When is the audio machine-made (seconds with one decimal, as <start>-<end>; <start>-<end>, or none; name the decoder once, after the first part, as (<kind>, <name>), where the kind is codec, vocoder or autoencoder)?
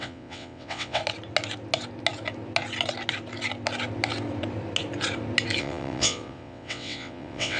0.0-1.0 (vocoder, WaveNeXt); 5.6-7.6